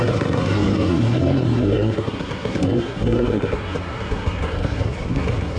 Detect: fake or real fake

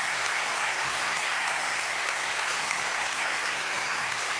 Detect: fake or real fake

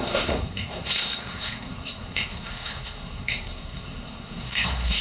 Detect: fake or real fake